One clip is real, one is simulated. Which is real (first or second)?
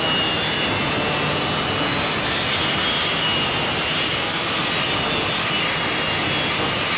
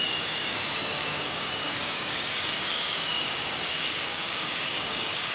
first